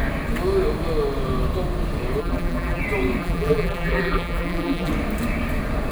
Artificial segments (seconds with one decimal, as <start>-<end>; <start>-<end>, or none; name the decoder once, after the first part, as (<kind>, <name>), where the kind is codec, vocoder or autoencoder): 2.2-2.8 (vocoder, BigVGAN v2); 3.2-4.9